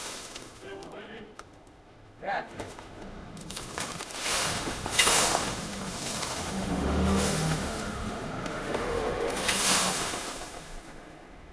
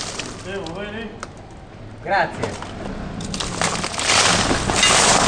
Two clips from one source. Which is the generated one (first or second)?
first